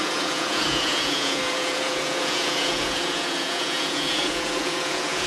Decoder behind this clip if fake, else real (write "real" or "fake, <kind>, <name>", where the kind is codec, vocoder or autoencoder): fake, vocoder, Vocos